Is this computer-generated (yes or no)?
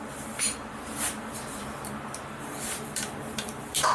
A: yes